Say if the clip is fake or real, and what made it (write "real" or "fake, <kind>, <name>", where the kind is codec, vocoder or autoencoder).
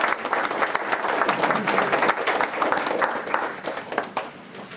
real